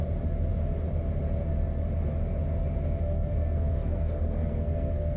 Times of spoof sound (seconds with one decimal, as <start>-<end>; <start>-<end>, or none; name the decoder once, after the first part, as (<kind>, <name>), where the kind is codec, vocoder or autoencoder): 3.0-5.2 (codec, SNAC)